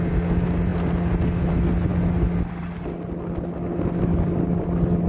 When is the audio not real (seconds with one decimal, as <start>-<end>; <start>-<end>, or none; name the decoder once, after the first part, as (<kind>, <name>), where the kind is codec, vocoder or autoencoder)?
none